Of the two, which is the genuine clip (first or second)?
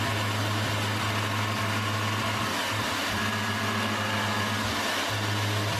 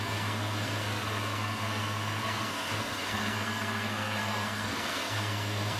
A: first